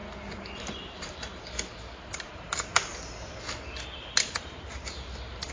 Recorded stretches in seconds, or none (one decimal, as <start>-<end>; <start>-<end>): 0.0-0.6; 1.3-2.1; 2.9-4.4